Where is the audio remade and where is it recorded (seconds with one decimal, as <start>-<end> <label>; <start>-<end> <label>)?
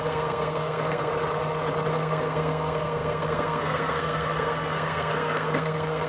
0.0-1.1 remade; 1.1-1.9 recorded; 1.9-6.1 remade